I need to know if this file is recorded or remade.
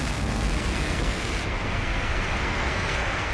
remade